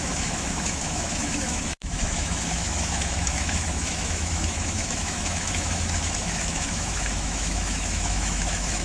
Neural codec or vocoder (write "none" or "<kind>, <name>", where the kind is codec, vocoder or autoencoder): autoencoder, DAC-VAE